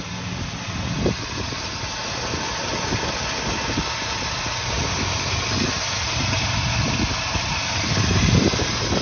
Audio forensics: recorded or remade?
recorded